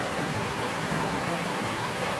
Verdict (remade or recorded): remade